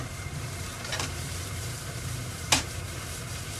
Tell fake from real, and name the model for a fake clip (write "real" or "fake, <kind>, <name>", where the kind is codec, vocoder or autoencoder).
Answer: fake, vocoder, BigVGAN v2